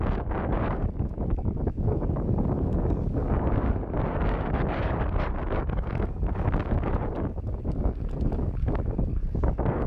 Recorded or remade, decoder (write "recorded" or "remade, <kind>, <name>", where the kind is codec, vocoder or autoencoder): remade, codec, DAC